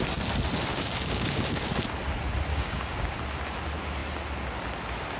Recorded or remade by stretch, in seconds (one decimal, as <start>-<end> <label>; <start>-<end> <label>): 0.0-0.7 recorded; 0.7-1.7 remade; 1.7-2.5 recorded; 2.5-3.1 remade; 3.1-5.2 recorded